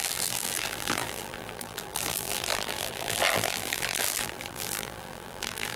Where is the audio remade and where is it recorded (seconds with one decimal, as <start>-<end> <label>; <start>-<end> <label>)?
0.0-5.8 remade